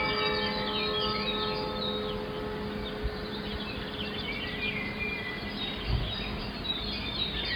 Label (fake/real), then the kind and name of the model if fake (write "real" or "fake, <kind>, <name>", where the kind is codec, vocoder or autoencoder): real